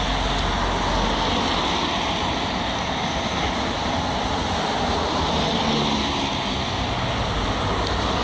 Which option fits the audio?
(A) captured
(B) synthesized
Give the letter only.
A